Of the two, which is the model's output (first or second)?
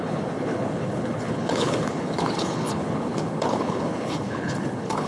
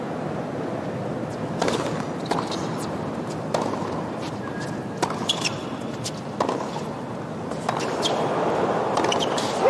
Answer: first